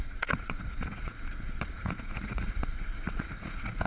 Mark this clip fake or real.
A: fake